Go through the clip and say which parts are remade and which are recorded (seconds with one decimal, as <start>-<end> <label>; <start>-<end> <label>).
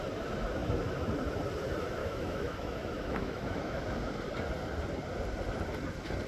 0.0-2.0 recorded; 2.0-3.8 remade; 3.8-6.3 recorded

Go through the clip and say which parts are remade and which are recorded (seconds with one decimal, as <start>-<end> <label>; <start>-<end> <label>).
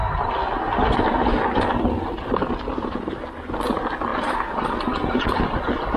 0.0-6.0 recorded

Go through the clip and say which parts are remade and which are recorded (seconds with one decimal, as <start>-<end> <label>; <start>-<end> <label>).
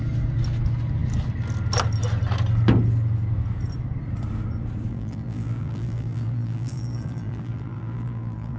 0.0-4.9 recorded; 4.9-8.6 remade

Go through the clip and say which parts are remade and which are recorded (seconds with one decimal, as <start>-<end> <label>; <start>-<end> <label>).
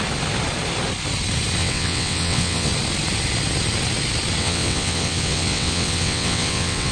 0.0-1.6 recorded; 1.6-2.7 remade; 2.7-4.4 recorded; 4.4-6.9 remade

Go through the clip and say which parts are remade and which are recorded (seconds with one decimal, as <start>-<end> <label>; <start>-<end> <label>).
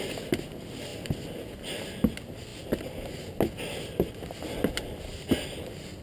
0.0-6.0 recorded